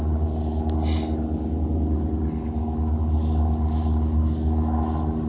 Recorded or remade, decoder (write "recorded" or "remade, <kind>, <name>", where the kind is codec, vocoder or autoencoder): recorded